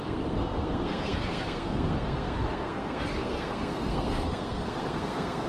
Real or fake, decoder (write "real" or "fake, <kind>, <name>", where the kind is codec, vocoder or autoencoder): fake, codec, SNAC